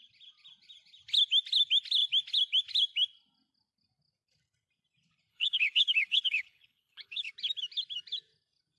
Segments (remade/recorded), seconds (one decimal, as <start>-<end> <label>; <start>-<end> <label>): 0.0-5.3 recorded; 5.3-7.3 remade; 7.3-8.8 recorded